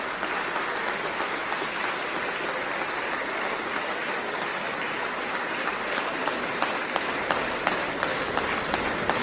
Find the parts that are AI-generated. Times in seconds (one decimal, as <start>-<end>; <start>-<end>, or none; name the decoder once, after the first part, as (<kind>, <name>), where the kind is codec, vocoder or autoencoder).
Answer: none